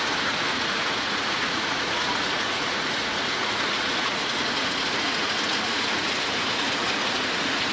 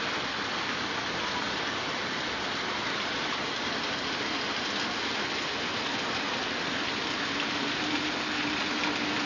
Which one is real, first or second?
second